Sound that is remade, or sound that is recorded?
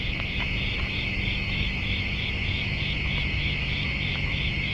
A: remade